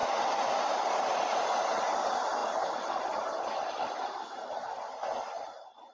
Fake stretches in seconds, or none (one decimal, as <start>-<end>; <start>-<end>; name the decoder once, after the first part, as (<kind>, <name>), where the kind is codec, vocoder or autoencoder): 2.4-3.0 (vocoder, BigVGAN v2)